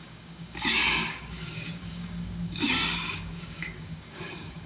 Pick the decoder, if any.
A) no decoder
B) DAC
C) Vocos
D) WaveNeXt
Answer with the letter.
B